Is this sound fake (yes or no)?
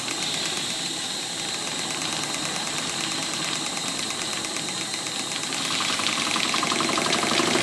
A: yes